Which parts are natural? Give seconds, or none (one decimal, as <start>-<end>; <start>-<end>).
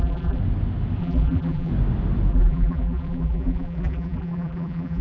0.4-1.0; 1.7-2.3